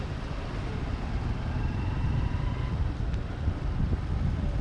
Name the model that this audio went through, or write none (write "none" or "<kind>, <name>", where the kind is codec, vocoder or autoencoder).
none